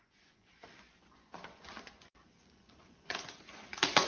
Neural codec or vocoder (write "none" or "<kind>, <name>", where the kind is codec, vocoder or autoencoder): vocoder, Vocos